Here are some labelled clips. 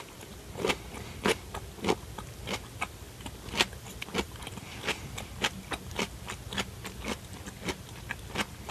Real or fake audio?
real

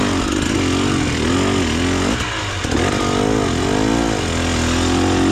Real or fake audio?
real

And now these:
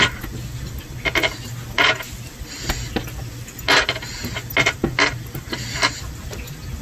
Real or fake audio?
real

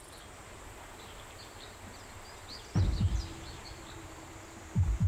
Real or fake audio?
real